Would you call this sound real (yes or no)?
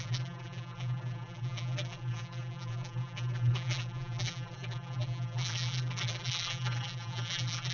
no